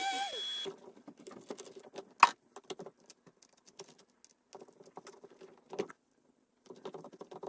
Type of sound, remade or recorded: recorded